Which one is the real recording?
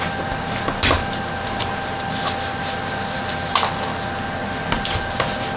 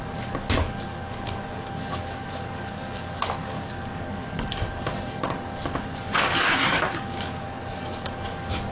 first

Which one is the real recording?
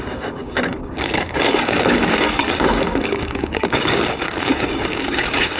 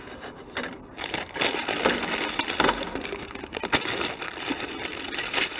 second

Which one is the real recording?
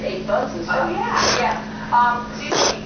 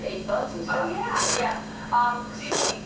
first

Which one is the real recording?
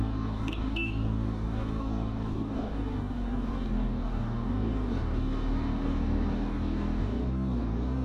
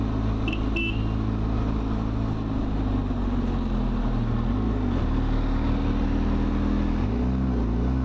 second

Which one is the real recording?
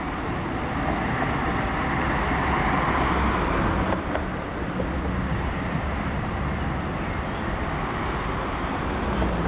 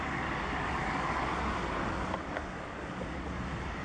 first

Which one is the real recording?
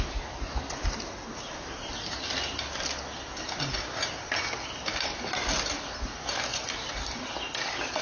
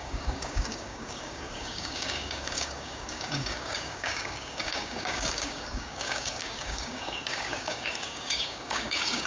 first